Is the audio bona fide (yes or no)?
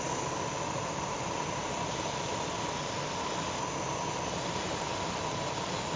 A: yes